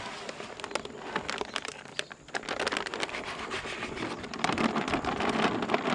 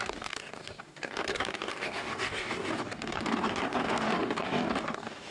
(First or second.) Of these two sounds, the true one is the first